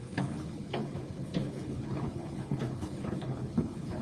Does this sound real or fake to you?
fake